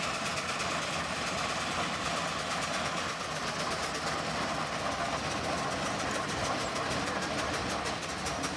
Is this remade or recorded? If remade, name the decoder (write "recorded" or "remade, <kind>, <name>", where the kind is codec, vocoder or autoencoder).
recorded